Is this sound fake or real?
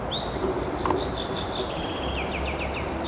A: real